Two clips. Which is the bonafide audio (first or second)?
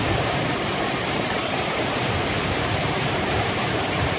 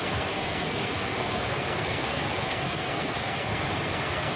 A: first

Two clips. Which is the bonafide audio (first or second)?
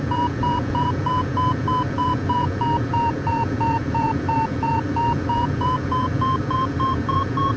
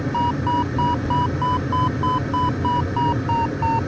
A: second